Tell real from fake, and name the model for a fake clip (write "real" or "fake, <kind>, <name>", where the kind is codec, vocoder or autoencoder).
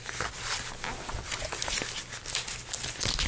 real